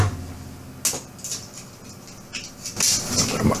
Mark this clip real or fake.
real